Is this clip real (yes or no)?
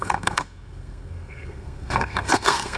no